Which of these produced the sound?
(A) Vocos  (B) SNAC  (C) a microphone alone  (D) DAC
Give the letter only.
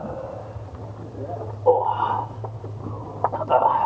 C